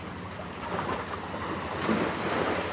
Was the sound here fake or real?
real